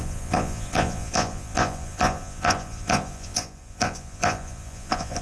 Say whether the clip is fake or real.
fake